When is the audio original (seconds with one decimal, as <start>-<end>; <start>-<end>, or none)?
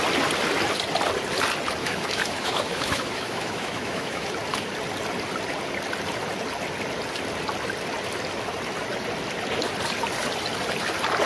0.0-1.8; 4.3-11.2